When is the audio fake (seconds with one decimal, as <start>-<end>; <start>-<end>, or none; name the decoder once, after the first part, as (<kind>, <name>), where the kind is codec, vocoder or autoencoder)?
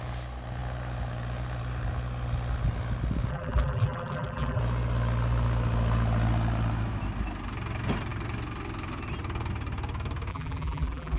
3.3-4.6 (vocoder, BigVGAN v2); 10.3-11.2